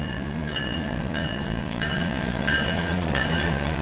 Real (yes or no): no